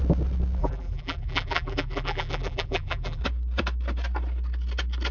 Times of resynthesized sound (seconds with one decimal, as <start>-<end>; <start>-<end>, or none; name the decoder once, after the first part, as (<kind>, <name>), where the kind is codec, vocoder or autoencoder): 0.6-3.2 (vocoder, BigVGAN v2)